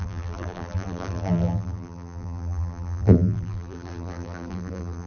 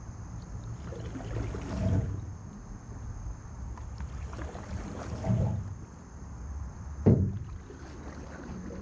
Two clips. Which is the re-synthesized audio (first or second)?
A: first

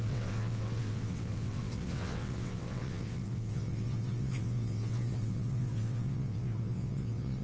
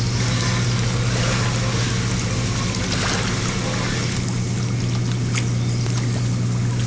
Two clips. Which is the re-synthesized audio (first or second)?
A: first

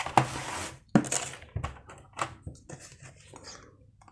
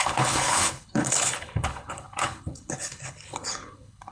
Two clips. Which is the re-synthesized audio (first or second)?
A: second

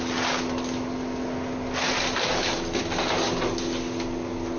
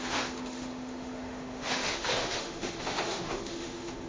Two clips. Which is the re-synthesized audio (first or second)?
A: second